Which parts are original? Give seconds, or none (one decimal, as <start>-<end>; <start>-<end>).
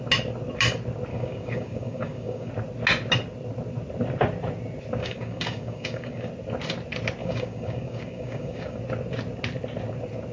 0.0-1.1; 2.5-5.0; 6.3-7.2; 8.8-10.3